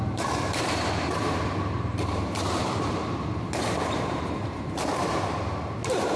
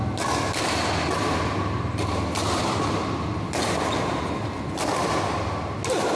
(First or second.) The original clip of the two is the second